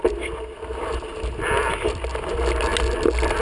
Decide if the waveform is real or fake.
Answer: real